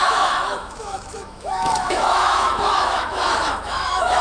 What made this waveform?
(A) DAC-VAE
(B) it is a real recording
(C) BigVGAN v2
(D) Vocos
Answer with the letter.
A